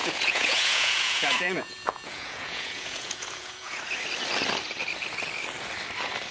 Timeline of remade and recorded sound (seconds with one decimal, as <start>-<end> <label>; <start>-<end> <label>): 0.0-3.8 remade; 3.8-6.3 recorded